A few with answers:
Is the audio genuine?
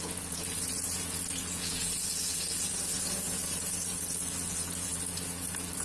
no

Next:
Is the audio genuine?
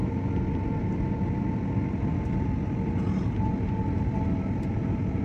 yes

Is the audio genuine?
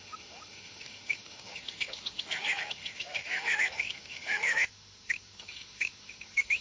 no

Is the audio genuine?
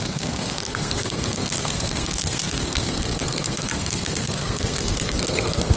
no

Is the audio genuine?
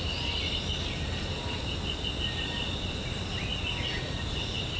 yes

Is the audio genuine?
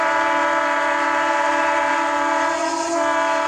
no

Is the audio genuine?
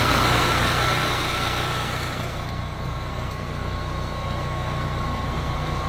no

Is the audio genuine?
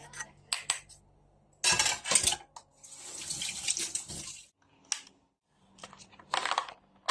yes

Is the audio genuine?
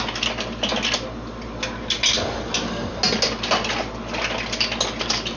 yes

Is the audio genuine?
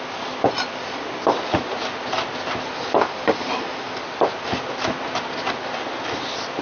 yes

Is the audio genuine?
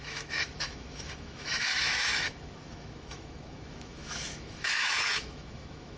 no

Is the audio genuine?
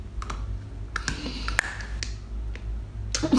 yes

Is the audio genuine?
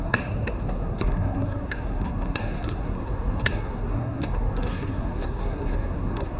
no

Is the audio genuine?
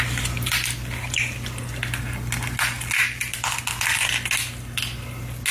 yes